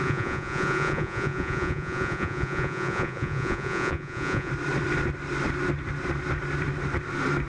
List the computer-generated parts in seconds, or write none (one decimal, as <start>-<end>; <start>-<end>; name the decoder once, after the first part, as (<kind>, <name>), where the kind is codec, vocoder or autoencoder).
0.0-4.5 (vocoder, Vocos)

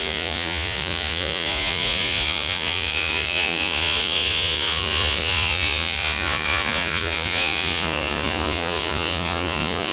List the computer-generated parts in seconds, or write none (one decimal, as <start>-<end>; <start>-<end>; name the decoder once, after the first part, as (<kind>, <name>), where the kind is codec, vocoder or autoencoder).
0.0-9.9 (vocoder, Vocos)